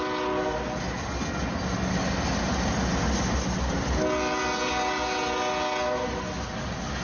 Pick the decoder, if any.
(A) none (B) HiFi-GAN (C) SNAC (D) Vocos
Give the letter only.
A